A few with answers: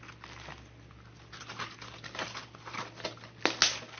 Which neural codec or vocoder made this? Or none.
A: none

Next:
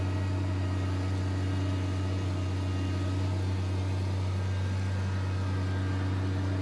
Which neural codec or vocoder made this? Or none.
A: none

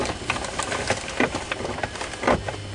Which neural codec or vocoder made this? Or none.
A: none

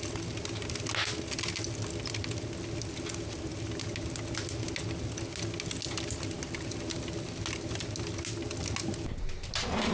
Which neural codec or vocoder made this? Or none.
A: none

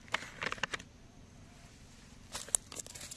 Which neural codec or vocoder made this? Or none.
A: none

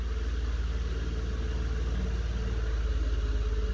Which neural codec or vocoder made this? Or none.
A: none